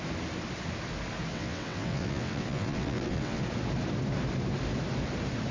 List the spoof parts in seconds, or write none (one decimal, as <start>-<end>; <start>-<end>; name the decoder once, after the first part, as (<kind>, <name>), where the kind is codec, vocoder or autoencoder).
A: 1.3-3.4 (vocoder, WaveNeXt)